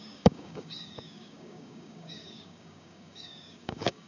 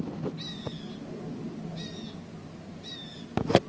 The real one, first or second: second